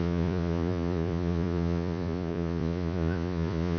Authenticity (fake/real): fake